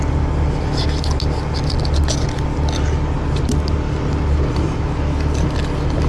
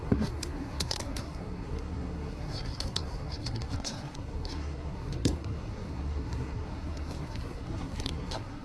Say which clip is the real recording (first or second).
first